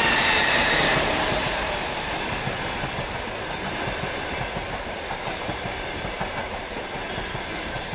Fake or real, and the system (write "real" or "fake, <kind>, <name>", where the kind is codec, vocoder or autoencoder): fake, vocoder, BigVGAN v2